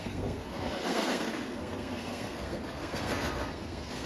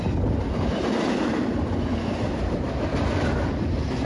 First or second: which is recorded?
second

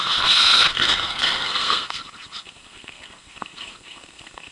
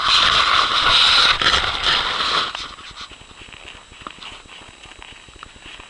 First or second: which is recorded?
second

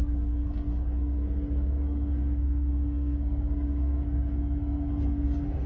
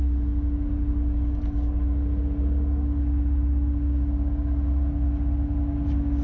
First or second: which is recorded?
second